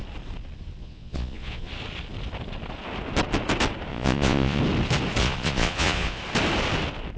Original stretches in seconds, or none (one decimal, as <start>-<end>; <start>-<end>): 0.0-0.8; 1.7-3.9; 4.6-5.2; 6.2-7.2